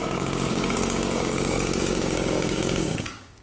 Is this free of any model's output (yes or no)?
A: no